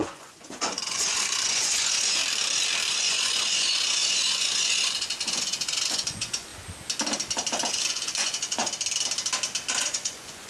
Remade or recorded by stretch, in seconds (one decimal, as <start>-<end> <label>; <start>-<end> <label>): 0.0-2.2 remade; 2.2-2.9 recorded; 2.9-6.5 remade; 6.5-7.7 recorded; 7.7-8.6 remade; 8.6-9.8 recorded; 9.8-10.5 remade